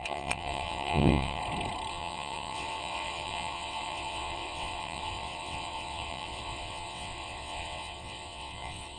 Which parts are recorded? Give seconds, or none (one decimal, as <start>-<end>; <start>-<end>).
1.4-1.9